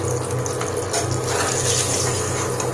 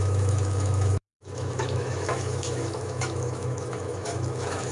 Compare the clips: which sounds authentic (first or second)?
first